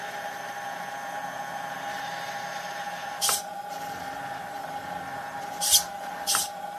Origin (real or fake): fake